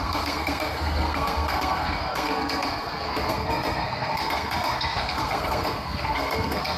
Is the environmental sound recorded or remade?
remade